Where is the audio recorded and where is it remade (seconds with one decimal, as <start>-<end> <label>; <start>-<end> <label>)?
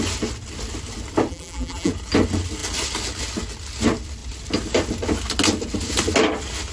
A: 0.0-1.3 recorded; 1.3-1.9 remade; 1.9-6.7 recorded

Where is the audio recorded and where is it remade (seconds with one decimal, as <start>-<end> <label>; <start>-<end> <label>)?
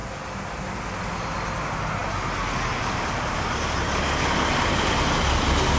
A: 0.0-5.8 recorded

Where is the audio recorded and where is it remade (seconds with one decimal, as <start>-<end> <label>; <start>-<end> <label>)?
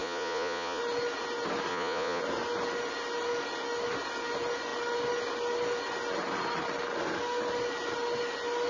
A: 0.0-0.8 remade; 0.8-1.7 recorded; 1.7-2.2 remade; 2.2-8.7 recorded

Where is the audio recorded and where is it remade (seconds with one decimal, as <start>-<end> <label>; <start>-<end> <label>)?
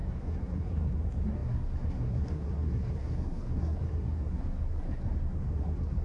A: 0.0-6.0 remade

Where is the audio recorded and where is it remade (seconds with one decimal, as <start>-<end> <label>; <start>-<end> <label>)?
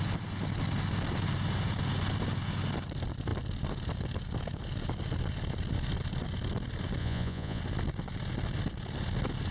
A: 0.0-7.0 recorded; 7.0-7.6 remade; 7.6-9.5 recorded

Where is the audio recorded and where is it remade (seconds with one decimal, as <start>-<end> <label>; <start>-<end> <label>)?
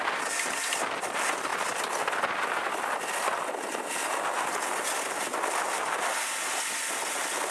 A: 0.0-7.5 recorded